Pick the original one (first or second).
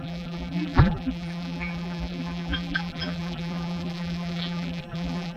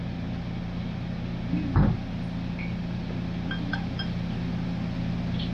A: second